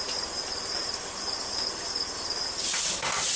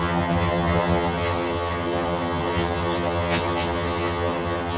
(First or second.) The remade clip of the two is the second